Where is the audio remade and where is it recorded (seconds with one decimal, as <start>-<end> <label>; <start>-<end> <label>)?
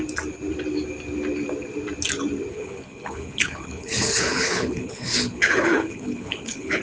0.0-2.5 recorded; 2.5-6.8 remade